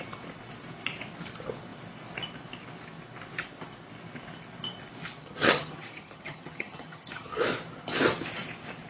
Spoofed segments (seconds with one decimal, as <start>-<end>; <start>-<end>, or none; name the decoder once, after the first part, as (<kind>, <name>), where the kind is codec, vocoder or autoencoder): 5.2-7.4 (vocoder, HiFi-GAN)